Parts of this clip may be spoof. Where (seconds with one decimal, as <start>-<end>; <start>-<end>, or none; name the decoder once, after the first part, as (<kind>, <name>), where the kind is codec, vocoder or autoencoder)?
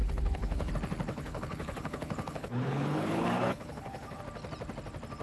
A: 0.0-0.7 (codec, HILCodec); 1.1-4.2